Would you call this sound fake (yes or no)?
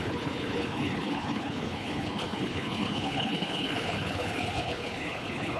yes